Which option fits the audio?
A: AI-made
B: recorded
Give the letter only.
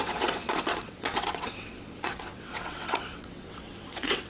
A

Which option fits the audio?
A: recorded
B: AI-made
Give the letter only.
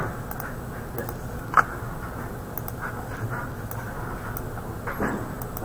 A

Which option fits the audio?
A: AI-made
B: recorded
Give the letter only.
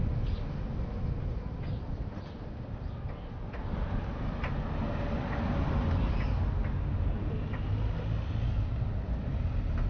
B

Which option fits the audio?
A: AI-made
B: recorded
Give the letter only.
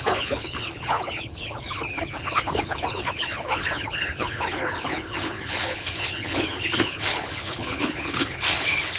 A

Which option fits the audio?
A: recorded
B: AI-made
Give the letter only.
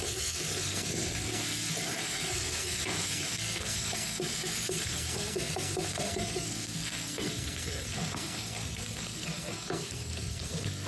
B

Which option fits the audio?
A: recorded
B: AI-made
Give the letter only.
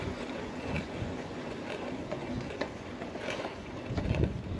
B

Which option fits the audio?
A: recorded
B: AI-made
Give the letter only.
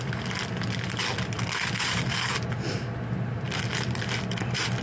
A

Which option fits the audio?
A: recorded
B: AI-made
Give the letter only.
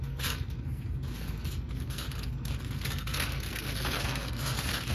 B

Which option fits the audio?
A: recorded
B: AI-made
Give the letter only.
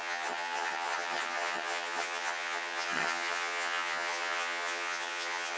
B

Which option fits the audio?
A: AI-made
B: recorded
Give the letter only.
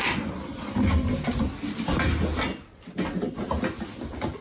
B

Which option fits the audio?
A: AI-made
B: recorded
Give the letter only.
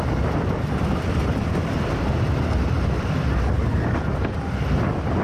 B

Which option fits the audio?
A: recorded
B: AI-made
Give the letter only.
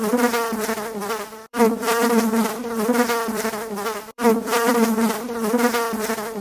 B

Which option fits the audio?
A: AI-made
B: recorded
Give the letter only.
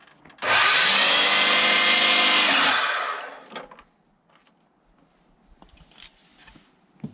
B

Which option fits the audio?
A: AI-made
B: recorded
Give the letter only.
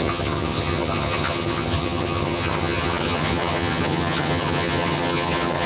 A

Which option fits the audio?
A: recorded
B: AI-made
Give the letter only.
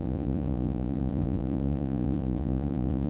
B